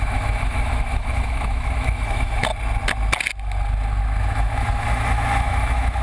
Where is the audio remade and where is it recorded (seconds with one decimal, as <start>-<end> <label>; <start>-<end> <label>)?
0.0-2.5 remade; 2.5-4.2 recorded; 4.2-6.0 remade